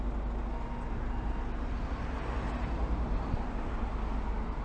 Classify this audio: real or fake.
real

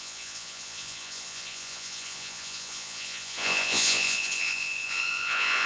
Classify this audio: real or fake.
fake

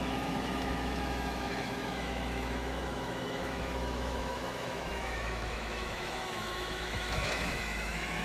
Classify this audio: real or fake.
fake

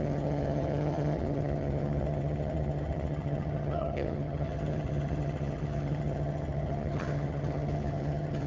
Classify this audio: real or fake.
fake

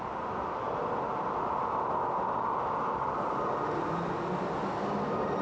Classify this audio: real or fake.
real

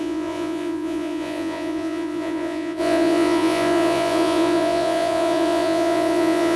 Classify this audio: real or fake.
fake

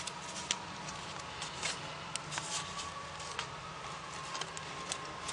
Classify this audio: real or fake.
real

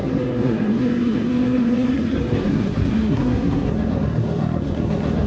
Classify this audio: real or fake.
fake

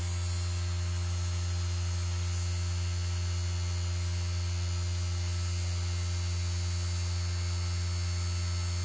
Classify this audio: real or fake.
real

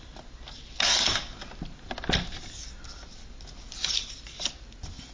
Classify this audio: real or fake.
real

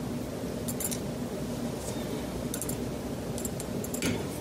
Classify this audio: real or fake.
real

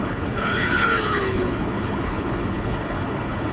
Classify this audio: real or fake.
fake